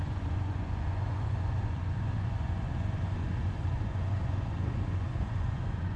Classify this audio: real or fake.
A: fake